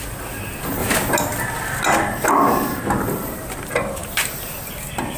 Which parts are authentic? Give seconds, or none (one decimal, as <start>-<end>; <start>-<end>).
0.0-5.2

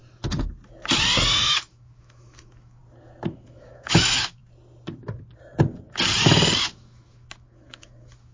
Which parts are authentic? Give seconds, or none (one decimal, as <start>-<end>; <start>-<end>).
0.0-1.4; 2.8-3.3; 4.4-6.6

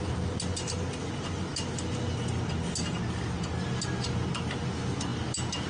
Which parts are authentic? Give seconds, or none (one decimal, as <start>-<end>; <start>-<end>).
0.0-5.7